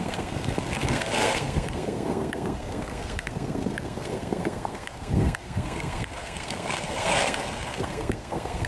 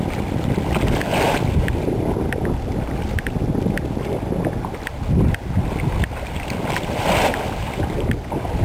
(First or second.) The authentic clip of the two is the second